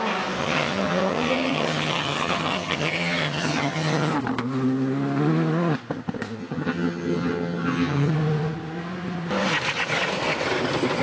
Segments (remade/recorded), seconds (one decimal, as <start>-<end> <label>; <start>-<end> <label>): 0.0-0.4 recorded; 0.4-4.1 remade; 4.1-6.4 recorded; 6.4-8.1 remade; 8.1-11.0 recorded